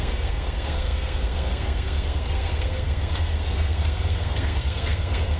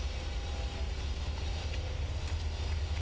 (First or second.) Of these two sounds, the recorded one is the second